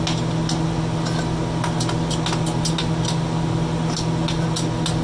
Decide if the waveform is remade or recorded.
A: recorded